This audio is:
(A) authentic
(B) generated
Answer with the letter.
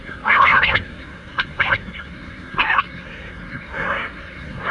B